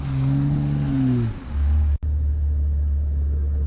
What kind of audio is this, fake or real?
real